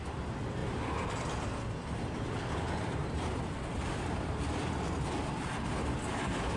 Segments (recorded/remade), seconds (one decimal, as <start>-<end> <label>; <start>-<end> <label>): 0.0-6.6 recorded